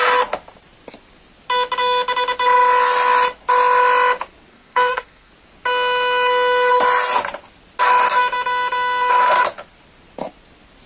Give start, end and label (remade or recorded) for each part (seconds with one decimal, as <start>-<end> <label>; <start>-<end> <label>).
0.0-4.5 recorded; 4.5-5.3 remade; 5.3-10.9 recorded